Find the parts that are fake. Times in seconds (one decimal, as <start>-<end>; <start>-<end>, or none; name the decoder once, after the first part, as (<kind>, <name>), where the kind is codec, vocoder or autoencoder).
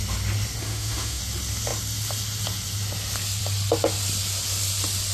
0.6-1.2 (autoencoder, DAC-VAE)